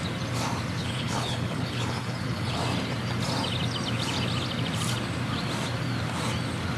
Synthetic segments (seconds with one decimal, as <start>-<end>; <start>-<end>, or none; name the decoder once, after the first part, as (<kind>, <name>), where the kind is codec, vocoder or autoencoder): 0.8-2.6 (codec, HILCodec)